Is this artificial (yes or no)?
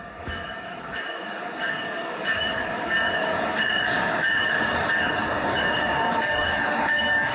yes